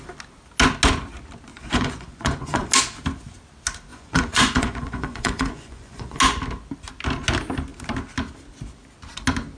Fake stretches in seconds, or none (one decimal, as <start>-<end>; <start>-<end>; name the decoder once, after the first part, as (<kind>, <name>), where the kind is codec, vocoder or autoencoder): 1.5-2.7 (vocoder, Vocos); 3.9-6.2